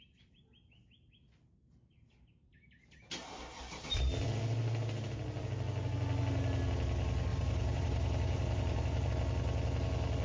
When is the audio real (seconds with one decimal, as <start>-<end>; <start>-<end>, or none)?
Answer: 0.0-7.3; 9.1-10.2

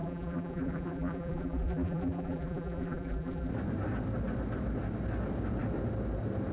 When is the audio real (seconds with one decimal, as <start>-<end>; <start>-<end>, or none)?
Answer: 3.5-6.5

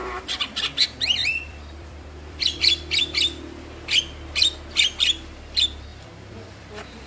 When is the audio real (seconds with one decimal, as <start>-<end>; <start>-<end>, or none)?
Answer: 0.6-1.3; 3.0-5.9